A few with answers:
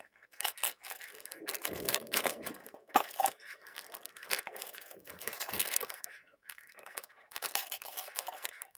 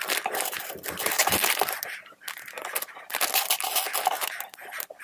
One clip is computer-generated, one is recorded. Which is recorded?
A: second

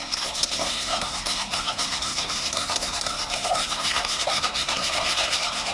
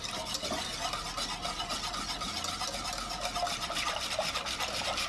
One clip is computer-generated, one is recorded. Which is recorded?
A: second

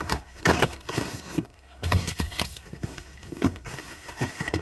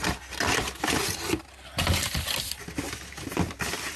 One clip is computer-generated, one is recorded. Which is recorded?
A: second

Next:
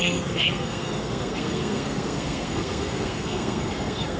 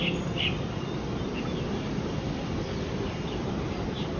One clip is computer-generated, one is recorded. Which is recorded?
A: second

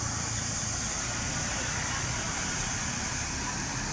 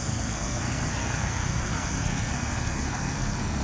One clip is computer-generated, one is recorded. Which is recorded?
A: first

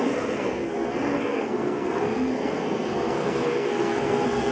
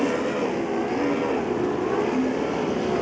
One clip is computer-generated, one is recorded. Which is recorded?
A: second